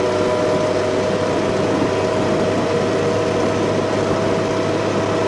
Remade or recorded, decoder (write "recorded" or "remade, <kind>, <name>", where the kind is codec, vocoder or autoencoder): recorded